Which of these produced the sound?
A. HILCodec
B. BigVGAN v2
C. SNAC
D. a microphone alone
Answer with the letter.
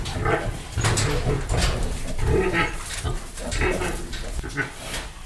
D